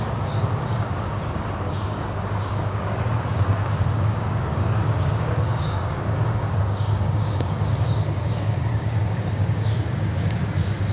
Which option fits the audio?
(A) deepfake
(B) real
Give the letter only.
A